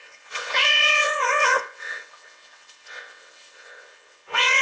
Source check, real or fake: fake